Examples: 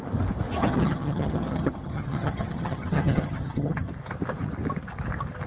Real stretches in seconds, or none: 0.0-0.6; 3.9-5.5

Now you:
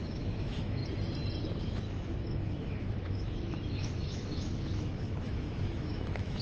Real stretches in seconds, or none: 0.8-1.6